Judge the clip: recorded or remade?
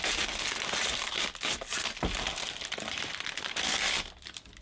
recorded